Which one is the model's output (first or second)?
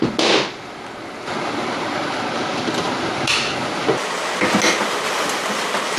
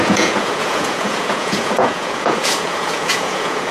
second